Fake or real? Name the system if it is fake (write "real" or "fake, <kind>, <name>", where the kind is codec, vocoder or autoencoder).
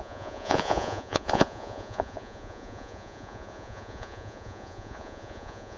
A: fake, vocoder, Vocos